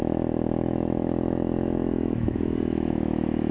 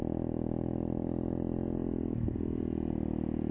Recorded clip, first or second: second